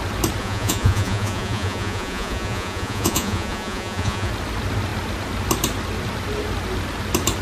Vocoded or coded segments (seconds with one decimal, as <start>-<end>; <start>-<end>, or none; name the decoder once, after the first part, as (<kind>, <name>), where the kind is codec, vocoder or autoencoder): 0.4-4.3 (vocoder, Vocos)